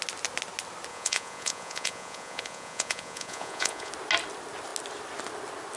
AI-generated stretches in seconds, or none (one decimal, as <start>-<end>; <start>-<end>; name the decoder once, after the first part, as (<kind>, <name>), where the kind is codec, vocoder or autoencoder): 0.9-3.9 (vocoder, Vocos)